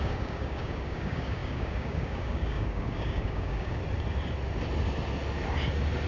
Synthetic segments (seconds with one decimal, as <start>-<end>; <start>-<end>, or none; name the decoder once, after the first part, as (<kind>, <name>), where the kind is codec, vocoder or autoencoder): 0.0-3.8 (codec, DAC)